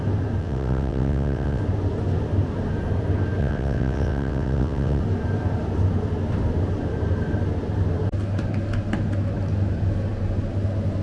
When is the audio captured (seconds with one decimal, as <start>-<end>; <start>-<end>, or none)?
0.0-0.4; 1.6-3.4; 5.0-11.0